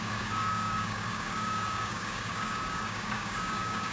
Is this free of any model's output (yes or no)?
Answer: no